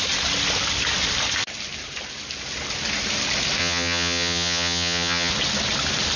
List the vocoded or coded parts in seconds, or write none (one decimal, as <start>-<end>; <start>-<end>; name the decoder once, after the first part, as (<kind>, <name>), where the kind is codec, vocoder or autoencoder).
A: 3.6-5.3 (vocoder, HiFi-GAN)